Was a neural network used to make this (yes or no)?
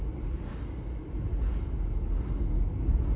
no